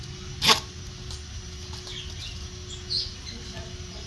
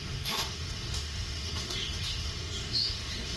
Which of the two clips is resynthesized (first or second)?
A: second